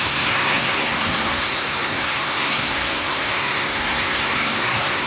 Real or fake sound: fake